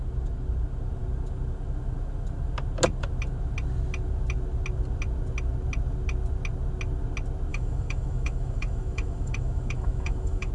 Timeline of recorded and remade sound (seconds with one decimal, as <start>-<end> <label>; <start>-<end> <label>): 0.0-7.5 recorded; 7.5-10.5 remade